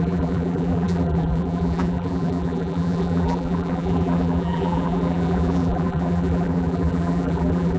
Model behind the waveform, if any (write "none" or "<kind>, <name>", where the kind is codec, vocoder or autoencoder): vocoder, BigVGAN v2